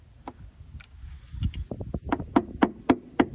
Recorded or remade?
recorded